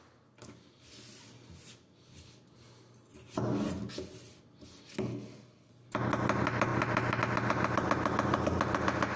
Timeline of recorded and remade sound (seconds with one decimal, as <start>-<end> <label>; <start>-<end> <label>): 0.0-5.0 recorded; 5.0-5.7 remade; 5.7-9.2 recorded